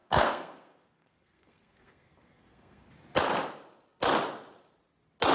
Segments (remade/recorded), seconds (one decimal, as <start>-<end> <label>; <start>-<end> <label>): 0.0-2.9 remade; 2.9-5.3 recorded